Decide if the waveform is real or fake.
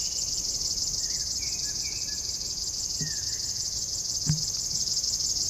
fake